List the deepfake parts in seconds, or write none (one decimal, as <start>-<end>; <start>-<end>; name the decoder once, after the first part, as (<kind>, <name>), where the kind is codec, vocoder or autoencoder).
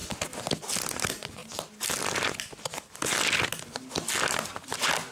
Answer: none